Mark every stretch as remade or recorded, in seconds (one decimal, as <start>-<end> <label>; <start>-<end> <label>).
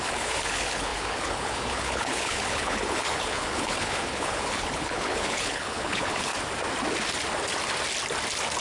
0.0-6.3 remade; 6.3-8.6 recorded